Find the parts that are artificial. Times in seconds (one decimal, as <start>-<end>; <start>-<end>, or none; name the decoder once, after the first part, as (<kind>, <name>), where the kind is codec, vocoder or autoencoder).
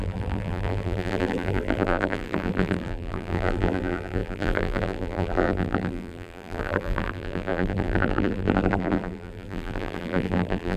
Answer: 0.0-10.8 (vocoder, BigVGAN v2)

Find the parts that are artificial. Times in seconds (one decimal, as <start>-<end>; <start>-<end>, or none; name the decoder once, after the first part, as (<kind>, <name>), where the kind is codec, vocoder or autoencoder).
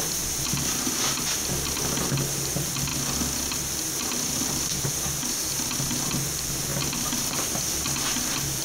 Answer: 6.7-8.6 (vocoder, BigVGAN v2)